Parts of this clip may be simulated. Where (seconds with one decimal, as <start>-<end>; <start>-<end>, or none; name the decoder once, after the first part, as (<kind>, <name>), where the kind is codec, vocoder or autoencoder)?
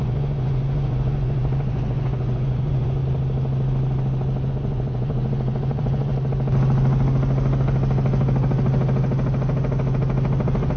0.0-3.0 (vocoder, Vocos); 4.5-6.1